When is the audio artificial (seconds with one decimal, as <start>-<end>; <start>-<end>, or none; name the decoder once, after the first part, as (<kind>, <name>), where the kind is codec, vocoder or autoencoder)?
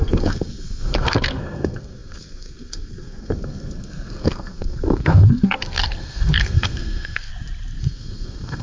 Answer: 0.0-7.3 (codec, SNAC); 7.8-8.6